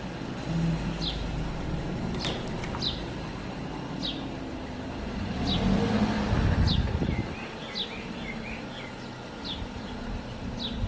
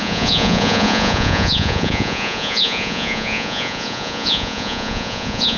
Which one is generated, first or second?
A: second